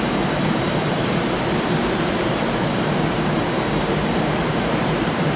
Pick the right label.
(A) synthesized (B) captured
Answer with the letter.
A